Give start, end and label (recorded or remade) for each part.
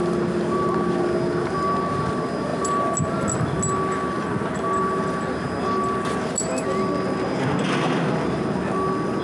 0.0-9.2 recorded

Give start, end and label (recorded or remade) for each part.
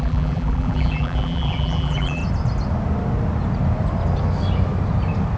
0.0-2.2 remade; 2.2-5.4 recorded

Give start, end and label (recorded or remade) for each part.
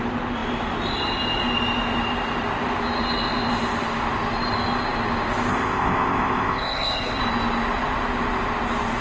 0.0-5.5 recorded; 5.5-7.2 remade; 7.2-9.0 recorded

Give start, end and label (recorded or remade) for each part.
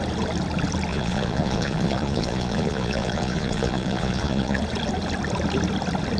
0.0-0.9 recorded; 0.9-4.6 remade; 4.6-6.2 recorded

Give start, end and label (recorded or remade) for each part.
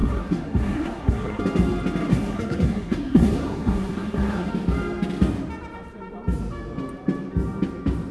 0.0-1.4 remade; 1.4-2.1 recorded; 2.1-4.5 remade; 4.5-8.1 recorded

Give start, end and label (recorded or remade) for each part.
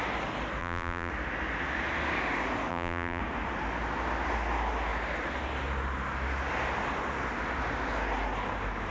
0.0-0.6 recorded; 0.6-1.1 remade; 1.1-2.7 recorded; 2.7-3.2 remade; 3.2-8.9 recorded